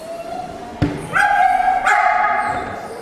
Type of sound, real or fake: real